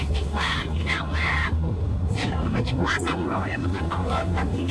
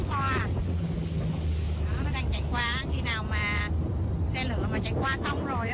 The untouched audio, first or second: second